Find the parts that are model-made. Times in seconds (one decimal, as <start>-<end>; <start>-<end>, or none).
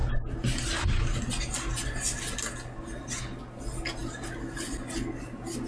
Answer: none